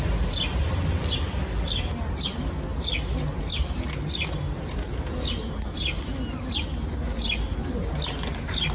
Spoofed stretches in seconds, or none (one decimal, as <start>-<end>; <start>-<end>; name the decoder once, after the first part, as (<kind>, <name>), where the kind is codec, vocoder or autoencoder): none